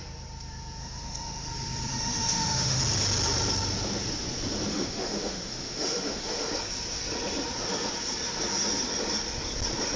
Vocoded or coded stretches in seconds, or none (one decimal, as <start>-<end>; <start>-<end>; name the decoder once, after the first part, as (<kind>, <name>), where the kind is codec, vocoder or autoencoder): 0.8-1.5 (autoencoder, DAC-VAE); 1.9-2.8; 4.7-6.5